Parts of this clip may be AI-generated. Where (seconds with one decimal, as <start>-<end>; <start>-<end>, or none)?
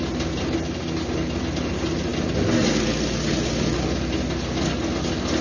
none